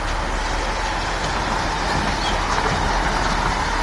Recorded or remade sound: recorded